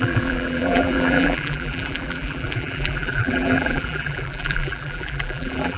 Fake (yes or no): yes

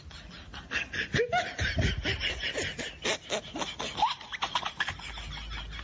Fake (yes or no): no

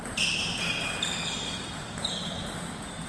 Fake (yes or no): no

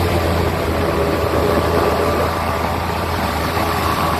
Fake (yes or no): yes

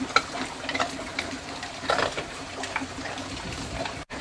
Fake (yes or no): yes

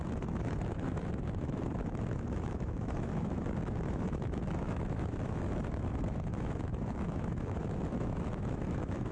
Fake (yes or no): yes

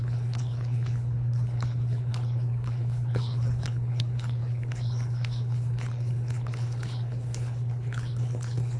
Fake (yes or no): yes